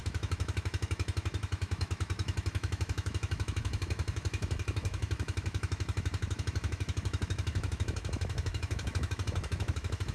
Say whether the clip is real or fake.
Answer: fake